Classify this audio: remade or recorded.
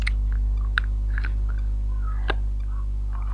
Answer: recorded